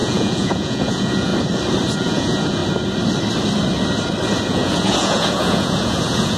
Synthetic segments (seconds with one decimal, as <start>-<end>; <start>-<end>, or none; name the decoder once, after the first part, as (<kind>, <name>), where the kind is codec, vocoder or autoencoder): 0.0-1.3 (vocoder, Vocos); 2.0-2.6; 4.5-6.4